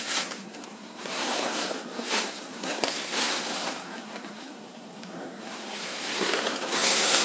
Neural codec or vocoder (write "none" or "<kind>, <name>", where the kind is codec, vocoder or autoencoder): codec, SNAC